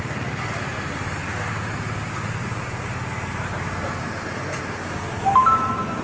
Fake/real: real